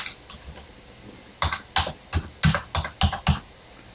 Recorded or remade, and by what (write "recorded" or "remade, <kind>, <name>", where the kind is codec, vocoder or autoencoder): recorded